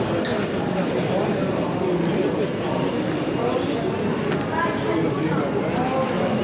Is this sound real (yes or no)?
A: yes